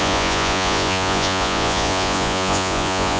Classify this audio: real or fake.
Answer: fake